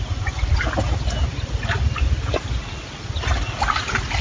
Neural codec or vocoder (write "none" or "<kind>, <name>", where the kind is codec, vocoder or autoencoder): none